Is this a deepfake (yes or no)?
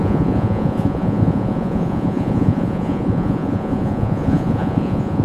yes